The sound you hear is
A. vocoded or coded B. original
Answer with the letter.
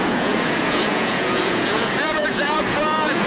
A